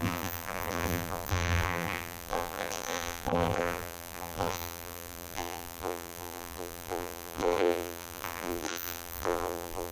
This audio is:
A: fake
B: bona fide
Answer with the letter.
A